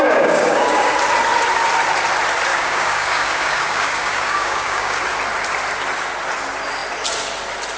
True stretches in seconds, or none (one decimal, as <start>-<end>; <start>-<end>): 0.9-2.5; 5.0-7.8